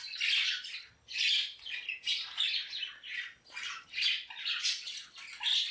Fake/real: real